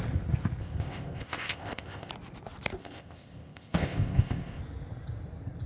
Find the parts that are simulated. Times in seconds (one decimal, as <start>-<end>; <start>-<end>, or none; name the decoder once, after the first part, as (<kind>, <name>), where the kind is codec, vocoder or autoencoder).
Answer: 0.6-2.1 (codec, ZipCodec); 2.8-4.6